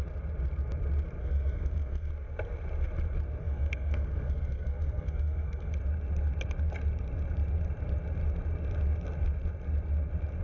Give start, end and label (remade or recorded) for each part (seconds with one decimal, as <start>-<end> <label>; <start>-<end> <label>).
0.0-1.2 recorded; 1.2-2.1 remade; 2.1-3.4 recorded; 3.4-5.7 remade; 5.7-10.4 recorded